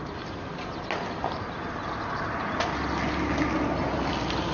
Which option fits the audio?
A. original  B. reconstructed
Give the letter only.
A